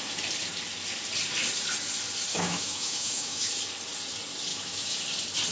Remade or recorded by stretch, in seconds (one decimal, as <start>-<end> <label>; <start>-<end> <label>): 0.0-2.3 recorded; 2.3-3.5 remade; 3.5-4.5 recorded; 4.5-5.0 remade; 5.0-5.5 recorded